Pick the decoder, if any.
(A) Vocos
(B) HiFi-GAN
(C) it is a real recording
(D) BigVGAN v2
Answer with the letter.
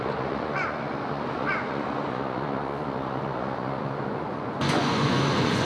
A